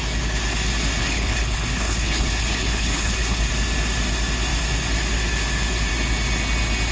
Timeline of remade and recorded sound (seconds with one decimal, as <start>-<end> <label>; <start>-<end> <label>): 0.0-1.0 recorded; 1.0-3.5 remade; 3.5-6.9 recorded